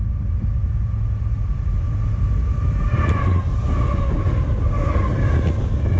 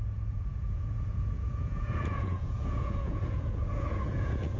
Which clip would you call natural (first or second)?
first